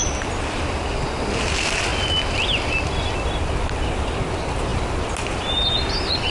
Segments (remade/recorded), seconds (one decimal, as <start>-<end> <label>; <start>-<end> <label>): 0.0-6.3 recorded